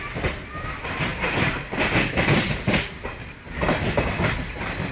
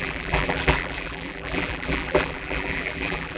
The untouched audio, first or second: first